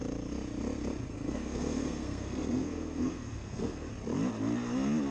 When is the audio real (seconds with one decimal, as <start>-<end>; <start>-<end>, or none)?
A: 0.0-1.1; 3.9-5.1